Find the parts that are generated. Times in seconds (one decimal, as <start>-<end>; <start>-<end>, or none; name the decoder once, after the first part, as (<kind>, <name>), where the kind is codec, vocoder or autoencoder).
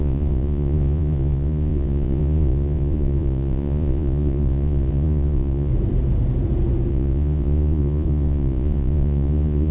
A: 0.0-5.7 (vocoder, Vocos); 6.9-9.7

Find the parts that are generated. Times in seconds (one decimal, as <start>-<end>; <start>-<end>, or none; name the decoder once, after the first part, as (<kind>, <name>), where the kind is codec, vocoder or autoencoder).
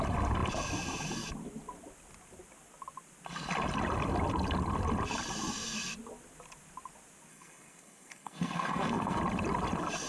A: 7.3-9.2 (codec, SNAC)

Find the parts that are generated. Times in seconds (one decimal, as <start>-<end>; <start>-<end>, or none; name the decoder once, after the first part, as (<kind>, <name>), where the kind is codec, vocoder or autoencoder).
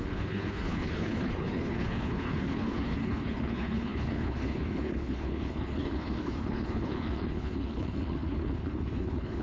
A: 0.0-9.4 (codec, HILCodec)